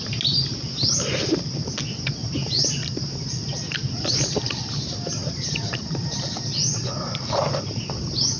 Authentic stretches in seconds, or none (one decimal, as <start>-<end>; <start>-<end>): 0.0-2.2; 3.5-5.2; 7.9-8.4